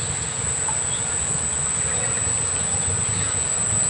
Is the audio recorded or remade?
recorded